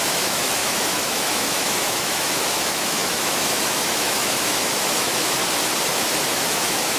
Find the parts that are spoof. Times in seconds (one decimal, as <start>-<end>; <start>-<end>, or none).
0.0-5.4; 5.9-7.0

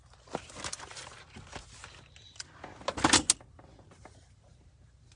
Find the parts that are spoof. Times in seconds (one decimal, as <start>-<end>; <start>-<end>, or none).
none

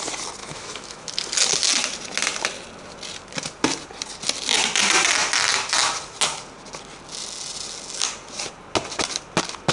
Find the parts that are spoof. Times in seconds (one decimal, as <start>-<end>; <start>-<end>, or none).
0.4-1.1

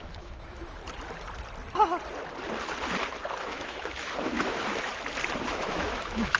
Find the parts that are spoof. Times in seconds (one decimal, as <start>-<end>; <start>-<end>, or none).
0.0-0.8; 3.4-4.9; 5.5-6.4

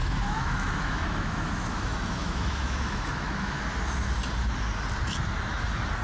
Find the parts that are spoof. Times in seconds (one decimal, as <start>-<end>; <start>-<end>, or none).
0.0-3.6